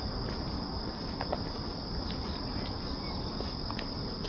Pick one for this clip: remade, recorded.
recorded